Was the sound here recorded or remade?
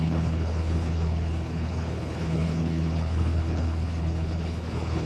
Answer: remade